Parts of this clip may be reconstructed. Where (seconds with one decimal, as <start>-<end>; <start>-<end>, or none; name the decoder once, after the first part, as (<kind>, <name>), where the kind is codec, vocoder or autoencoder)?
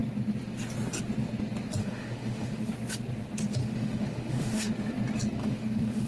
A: 1.8-2.7 (autoencoder, DAC-VAE); 3.6-4.7; 5.4-6.1